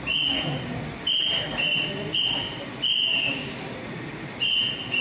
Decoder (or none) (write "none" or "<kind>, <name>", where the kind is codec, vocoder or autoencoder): none